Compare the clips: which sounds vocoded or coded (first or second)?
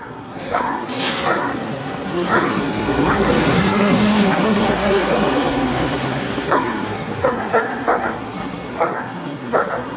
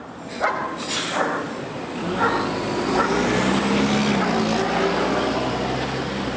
first